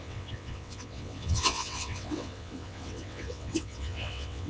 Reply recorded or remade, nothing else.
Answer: remade